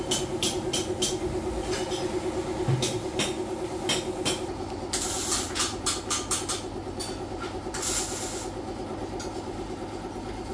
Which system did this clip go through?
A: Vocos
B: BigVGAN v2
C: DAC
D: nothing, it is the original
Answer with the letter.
D